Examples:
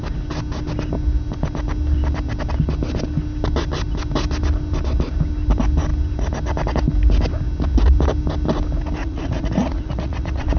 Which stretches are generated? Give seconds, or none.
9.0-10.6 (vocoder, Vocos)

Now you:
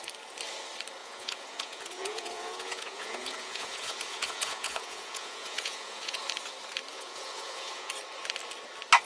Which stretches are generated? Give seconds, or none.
1.0-6.2 (vocoder, Vocos); 6.9-7.9